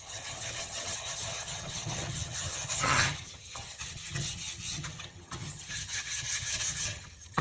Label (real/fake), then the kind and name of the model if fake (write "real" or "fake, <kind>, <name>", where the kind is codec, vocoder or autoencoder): fake, vocoder, HiFi-GAN